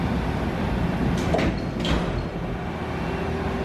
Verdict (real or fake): real